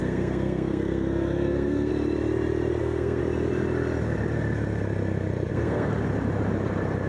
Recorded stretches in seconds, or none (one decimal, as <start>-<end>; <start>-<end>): 1.9-2.8; 3.2-5.5; 5.9-7.1